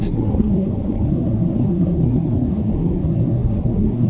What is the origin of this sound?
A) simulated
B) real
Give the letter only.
A